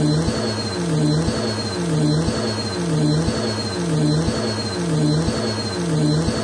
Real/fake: real